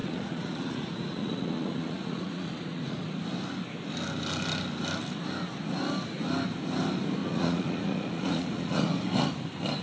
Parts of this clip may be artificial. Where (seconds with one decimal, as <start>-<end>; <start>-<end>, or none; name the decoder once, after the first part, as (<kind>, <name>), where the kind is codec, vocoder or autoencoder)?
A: 0.0-3.1 (vocoder, Vocos); 7.2-8.9